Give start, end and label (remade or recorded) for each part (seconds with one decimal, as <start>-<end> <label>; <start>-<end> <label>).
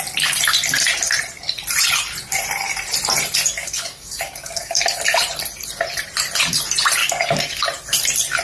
0.0-3.6 recorded; 3.6-4.8 remade; 4.8-7.0 recorded; 7.0-7.6 remade; 7.6-8.4 recorded